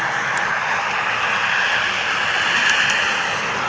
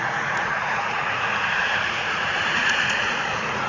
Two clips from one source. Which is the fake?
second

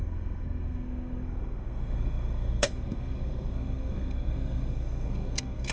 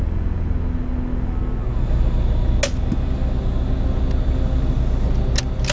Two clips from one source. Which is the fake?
first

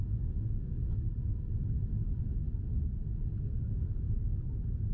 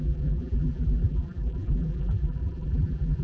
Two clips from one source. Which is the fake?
second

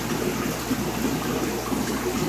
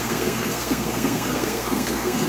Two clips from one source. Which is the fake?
second